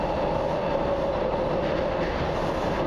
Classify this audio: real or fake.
fake